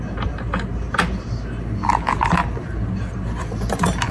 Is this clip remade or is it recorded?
recorded